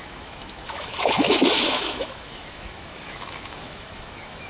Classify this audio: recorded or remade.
remade